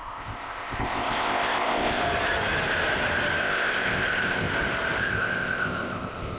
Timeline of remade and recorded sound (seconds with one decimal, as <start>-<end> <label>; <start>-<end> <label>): 0.0-2.0 remade; 2.0-3.4 recorded; 3.4-4.5 remade; 4.5-5.0 recorded; 5.0-6.4 remade